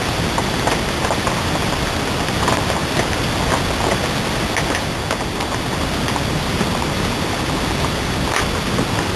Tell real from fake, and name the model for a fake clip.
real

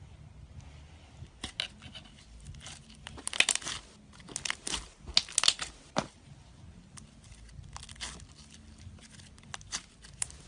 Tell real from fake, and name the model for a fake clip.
real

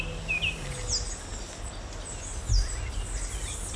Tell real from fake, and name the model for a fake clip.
real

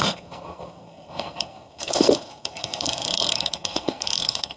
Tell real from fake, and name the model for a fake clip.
fake, codec, SNAC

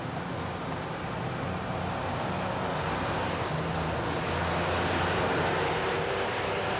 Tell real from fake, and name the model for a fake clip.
real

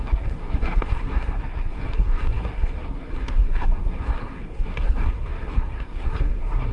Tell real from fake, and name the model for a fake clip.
fake, codec, SNAC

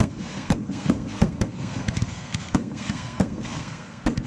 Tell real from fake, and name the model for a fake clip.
fake, codec, SNAC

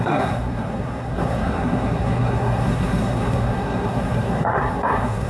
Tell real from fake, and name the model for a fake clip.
fake, codec, SNAC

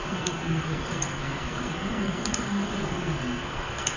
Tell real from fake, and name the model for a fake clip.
fake, codec, SNAC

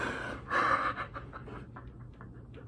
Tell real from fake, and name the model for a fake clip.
real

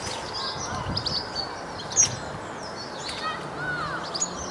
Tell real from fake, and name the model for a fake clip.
real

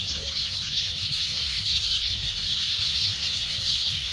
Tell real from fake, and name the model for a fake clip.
fake, codec, SNAC